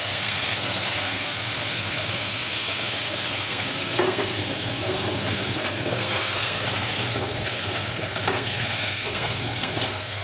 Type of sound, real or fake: fake